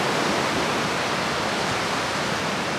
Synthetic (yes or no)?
no